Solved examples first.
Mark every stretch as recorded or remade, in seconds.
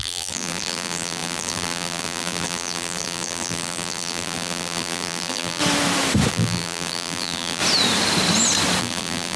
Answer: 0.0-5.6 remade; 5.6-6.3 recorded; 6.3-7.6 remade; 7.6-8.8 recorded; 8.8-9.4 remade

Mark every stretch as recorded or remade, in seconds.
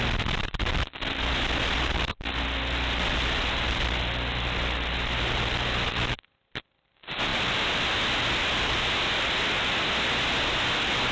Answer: 0.0-11.1 recorded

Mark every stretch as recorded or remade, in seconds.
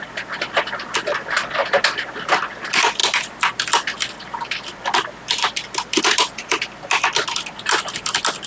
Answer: 0.0-8.5 recorded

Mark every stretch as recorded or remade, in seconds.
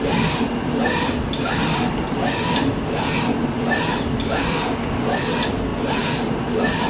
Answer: 0.0-5.7 recorded; 5.7-6.9 remade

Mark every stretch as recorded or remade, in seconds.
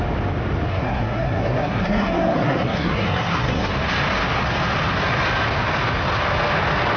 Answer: 0.0-0.7 recorded; 0.7-3.7 remade; 3.7-7.0 recorded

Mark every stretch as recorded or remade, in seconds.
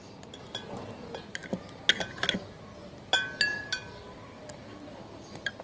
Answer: 0.0-5.6 recorded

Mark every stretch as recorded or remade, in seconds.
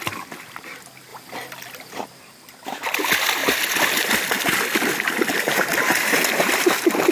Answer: 0.0-7.1 recorded